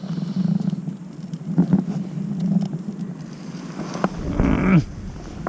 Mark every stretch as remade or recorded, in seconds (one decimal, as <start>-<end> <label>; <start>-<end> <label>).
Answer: 0.0-5.5 recorded